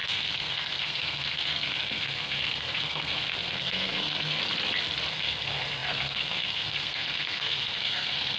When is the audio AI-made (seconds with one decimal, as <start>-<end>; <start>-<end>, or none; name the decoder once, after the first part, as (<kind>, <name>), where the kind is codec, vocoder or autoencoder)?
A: 0.0-4.4 (codec, SNAC); 5.1-8.4